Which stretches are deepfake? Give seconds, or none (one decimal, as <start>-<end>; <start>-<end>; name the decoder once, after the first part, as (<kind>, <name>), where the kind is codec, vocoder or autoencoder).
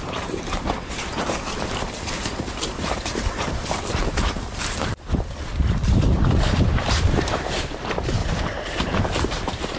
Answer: 0.0-8.2 (vocoder, BigVGAN v2); 9.2-9.8